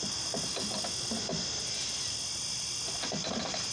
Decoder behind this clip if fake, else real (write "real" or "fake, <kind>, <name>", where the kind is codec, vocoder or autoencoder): real